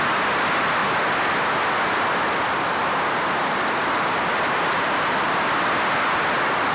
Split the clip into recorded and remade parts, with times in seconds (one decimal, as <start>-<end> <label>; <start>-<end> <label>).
0.0-0.8 remade; 0.8-1.9 recorded; 1.9-6.7 remade